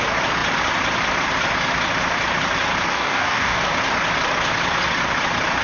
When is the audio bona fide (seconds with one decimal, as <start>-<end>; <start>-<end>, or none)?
0.0-2.9; 3.6-5.6